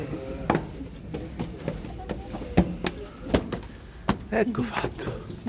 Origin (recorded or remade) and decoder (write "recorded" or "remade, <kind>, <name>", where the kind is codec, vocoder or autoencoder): recorded